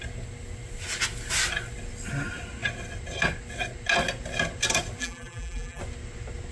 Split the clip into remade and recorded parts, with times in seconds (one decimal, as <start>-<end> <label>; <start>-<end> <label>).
0.0-5.0 recorded; 5.0-5.8 remade; 5.8-6.5 recorded